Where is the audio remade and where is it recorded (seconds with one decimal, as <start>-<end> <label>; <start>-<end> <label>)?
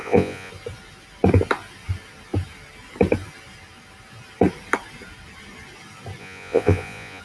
0.0-0.5 remade; 0.5-6.2 recorded; 6.2-7.2 remade